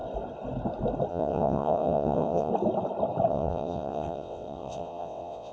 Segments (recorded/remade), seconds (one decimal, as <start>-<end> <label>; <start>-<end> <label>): 0.0-1.1 recorded; 1.1-2.5 remade; 2.5-3.3 recorded; 3.3-5.5 remade